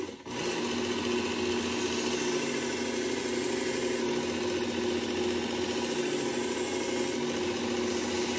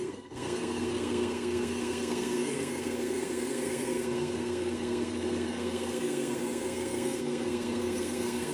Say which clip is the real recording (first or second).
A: first